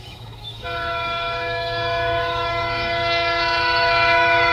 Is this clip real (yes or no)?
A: no